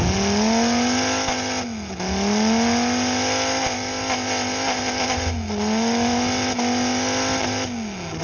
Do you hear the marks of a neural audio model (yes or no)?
no